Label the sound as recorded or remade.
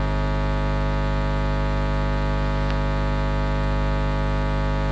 recorded